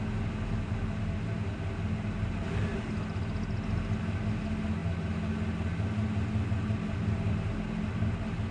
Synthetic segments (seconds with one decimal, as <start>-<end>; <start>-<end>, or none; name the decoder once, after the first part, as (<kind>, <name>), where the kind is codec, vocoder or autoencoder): none